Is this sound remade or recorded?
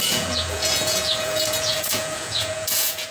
remade